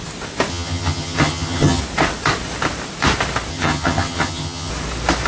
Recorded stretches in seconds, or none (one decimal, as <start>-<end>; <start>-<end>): 0.0-0.5; 1.8-3.5; 4.7-5.3